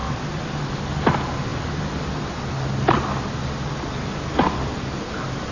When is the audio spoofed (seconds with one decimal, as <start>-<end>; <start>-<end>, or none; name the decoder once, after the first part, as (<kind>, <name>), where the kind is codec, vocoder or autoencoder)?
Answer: 0.0-0.7 (vocoder, BigVGAN v2)